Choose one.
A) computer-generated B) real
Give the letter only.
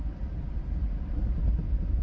B